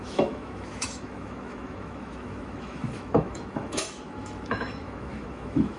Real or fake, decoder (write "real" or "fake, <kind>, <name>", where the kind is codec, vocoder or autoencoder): fake, autoencoder, DAC-VAE